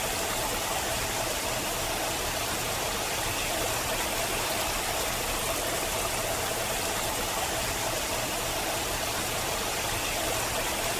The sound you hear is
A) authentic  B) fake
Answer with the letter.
B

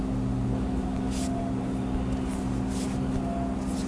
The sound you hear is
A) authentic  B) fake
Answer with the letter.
A